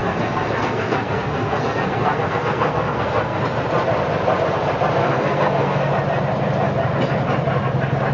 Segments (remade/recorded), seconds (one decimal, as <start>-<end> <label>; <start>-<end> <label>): 0.0-3.4 remade; 3.4-5.0 recorded; 5.0-5.9 remade; 5.9-8.1 recorded